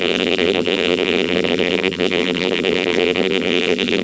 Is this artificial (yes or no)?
yes